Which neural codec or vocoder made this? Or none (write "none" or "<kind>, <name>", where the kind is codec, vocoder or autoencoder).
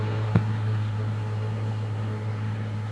codec, SNAC